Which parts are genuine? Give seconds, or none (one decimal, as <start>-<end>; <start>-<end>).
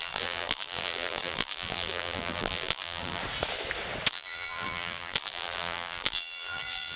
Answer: 3.2-4.1